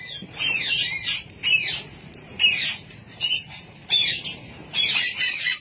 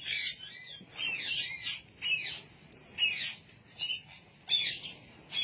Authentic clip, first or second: second